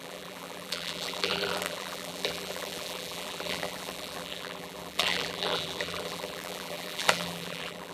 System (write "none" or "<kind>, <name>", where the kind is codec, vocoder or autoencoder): vocoder, BigVGAN v2